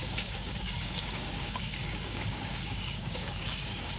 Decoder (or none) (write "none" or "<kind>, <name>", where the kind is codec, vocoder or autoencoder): codec, DAC